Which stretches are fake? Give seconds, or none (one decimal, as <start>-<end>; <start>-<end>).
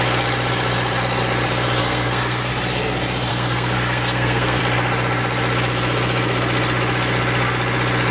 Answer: 1.8-2.5; 3.3-4.6